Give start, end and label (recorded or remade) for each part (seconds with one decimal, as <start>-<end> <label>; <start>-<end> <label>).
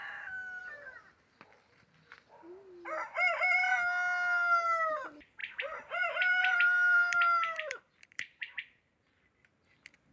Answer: 0.0-5.4 recorded; 5.4-9.1 remade; 9.1-10.1 recorded